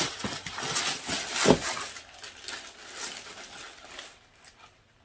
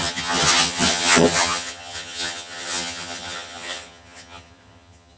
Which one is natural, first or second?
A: first